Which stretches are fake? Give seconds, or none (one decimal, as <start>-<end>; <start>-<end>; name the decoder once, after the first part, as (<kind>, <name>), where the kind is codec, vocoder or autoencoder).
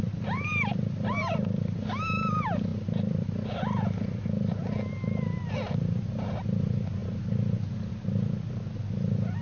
none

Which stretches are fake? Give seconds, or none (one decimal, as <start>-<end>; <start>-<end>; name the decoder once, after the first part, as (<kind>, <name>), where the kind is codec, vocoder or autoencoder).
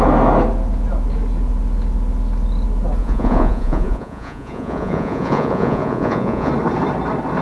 3.0-6.5 (vocoder, Vocos)